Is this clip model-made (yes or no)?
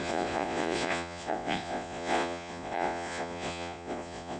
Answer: yes